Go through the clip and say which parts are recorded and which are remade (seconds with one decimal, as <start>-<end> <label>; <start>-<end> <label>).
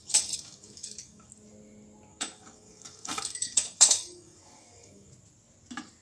0.0-1.3 remade; 1.3-2.1 recorded; 2.1-5.1 remade; 5.1-6.0 recorded